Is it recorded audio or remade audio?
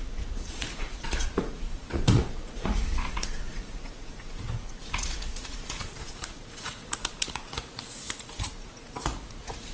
remade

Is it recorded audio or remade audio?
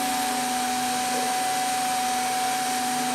recorded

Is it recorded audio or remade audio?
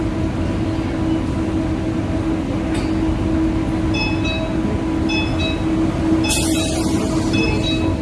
recorded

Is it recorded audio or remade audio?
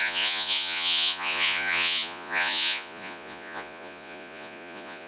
remade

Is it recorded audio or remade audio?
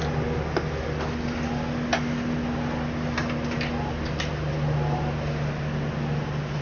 recorded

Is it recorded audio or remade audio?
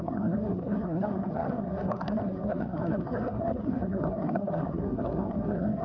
remade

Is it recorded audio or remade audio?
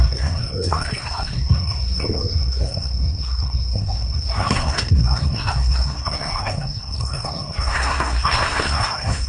remade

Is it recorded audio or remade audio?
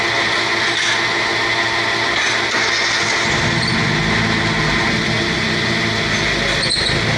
recorded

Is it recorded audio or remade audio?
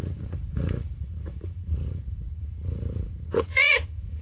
remade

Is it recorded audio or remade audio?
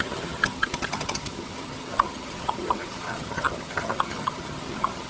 remade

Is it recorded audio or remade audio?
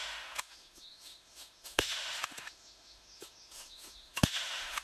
remade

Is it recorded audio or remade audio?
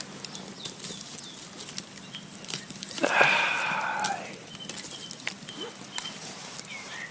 recorded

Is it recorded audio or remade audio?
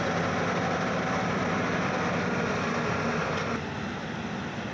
recorded